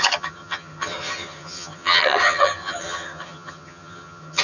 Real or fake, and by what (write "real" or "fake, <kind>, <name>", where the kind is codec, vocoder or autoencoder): fake, vocoder, HiFi-GAN